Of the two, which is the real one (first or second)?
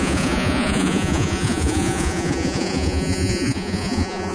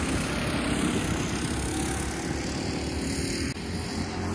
second